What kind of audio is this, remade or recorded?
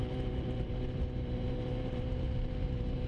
remade